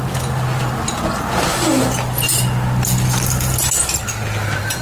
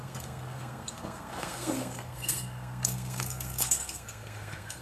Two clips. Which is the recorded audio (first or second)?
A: first